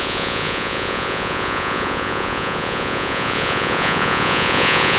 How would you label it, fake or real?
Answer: fake